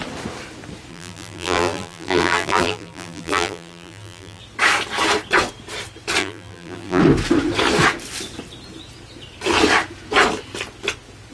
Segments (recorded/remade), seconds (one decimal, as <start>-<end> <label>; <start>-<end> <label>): 0.0-0.9 recorded; 0.9-4.4 remade; 4.4-6.2 recorded; 6.2-7.0 remade; 7.0-11.3 recorded